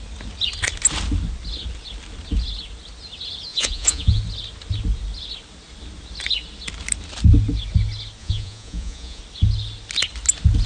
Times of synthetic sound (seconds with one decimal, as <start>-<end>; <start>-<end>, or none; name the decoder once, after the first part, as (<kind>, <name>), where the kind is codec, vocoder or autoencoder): 3.5-4.2 (vocoder, Vocos); 8.2-9.2